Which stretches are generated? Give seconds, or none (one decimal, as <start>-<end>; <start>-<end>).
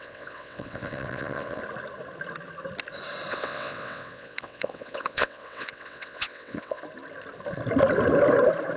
0.0-1.6; 3.3-6.8